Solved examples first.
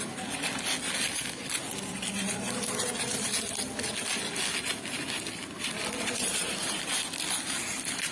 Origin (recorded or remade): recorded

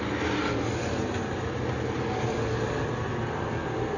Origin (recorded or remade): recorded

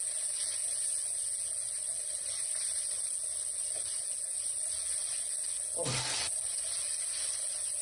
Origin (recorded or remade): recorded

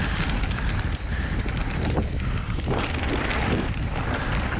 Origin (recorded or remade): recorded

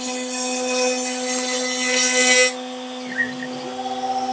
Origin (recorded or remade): recorded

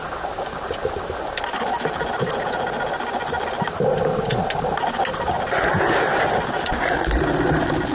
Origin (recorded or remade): recorded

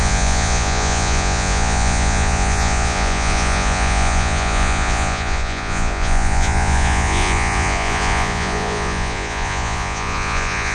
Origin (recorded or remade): remade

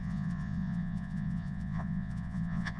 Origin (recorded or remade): remade